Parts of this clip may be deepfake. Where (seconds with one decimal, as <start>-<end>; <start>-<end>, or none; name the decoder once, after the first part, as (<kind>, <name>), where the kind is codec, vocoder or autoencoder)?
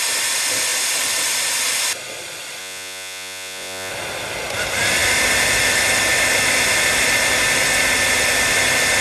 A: 2.6-3.9 (vocoder, Vocos)